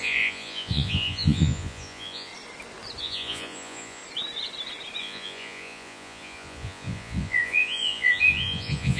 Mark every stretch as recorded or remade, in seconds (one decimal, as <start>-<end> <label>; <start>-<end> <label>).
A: 0.0-2.3 remade; 2.3-3.0 recorded; 3.0-4.0 remade; 4.0-5.0 recorded; 5.0-9.0 remade